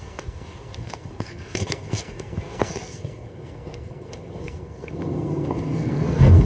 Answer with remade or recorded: remade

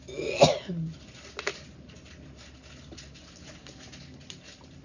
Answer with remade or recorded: recorded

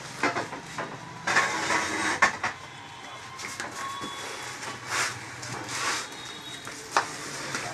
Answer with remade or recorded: recorded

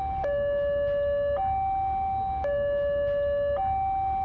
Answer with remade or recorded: recorded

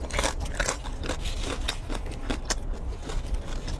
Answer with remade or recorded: recorded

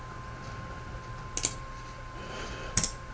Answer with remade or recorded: recorded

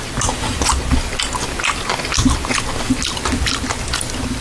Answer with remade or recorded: recorded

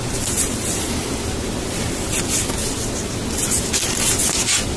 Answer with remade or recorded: recorded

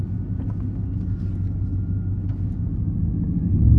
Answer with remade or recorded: recorded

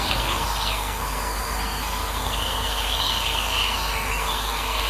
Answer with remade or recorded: remade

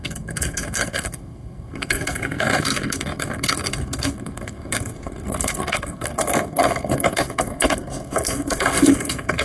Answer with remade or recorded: remade